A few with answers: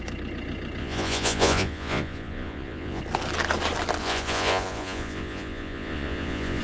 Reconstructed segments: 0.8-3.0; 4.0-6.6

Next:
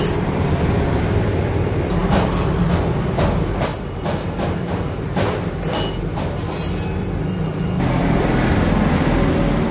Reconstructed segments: none